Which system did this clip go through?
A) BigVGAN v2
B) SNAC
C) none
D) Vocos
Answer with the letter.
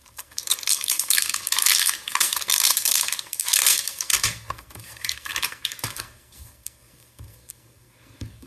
B